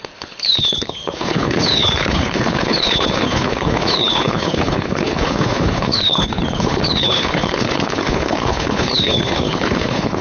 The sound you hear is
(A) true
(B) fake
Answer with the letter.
B